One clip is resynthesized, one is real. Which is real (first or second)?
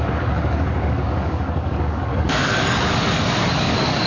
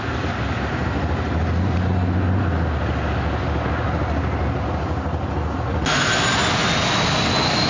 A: second